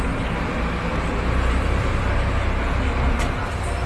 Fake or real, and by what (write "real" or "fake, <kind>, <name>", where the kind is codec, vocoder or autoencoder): real